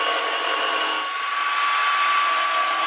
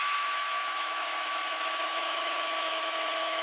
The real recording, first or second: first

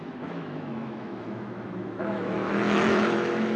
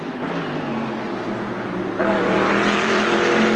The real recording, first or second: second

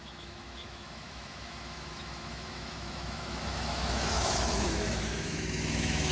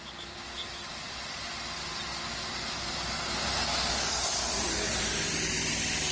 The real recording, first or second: second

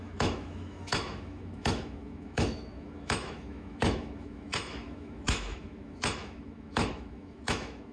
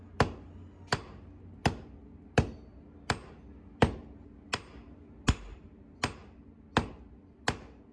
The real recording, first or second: second